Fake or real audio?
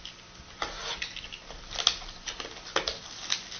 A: real